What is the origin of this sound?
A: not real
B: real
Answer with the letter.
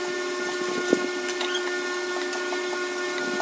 B